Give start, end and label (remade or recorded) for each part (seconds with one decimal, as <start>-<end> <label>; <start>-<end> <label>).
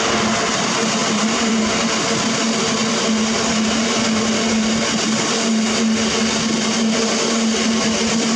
0.0-1.0 recorded; 1.0-1.6 remade; 1.6-8.4 recorded